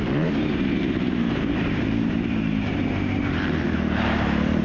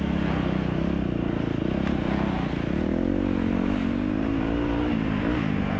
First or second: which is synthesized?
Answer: first